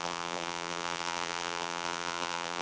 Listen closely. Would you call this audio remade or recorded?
remade